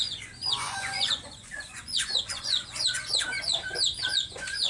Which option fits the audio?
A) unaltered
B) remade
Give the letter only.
B